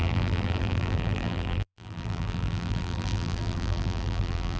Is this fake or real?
fake